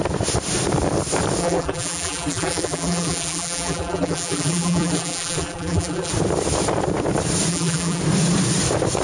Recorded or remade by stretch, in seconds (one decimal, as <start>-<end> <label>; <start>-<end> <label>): 0.0-1.4 recorded; 1.4-6.1 remade; 6.1-7.5 recorded; 7.5-8.0 remade; 8.0-9.0 recorded